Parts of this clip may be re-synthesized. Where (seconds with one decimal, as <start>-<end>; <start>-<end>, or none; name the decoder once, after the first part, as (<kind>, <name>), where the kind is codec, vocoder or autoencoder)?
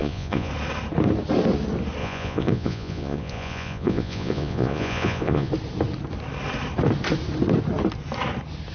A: 0.0-0.5 (vocoder, Vocos); 2.0-5.5